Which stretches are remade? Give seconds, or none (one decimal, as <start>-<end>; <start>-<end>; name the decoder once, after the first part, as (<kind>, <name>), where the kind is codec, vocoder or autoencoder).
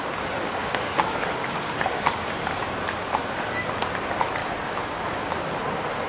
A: 0.6-1.7 (codec, DAC)